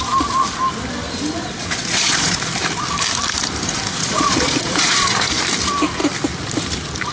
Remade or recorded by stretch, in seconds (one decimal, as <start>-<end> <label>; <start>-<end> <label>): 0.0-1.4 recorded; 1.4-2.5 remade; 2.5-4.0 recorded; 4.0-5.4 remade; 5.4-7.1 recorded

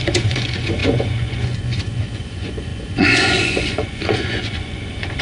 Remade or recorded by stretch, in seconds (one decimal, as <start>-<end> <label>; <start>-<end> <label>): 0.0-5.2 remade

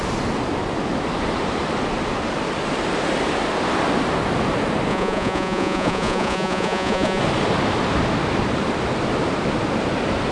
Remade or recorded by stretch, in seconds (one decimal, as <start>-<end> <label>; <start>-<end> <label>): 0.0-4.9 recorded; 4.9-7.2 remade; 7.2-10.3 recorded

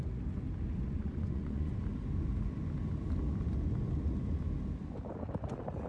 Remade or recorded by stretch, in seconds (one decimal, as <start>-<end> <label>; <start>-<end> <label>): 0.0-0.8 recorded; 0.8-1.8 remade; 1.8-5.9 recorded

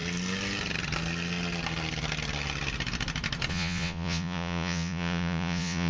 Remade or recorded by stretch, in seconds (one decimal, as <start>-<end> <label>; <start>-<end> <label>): 0.0-3.5 recorded; 3.5-5.9 remade